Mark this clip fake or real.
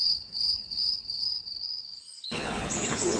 fake